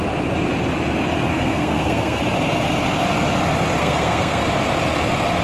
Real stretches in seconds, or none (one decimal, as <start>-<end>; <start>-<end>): 0.0-1.3; 2.2-3.8; 4.4-5.4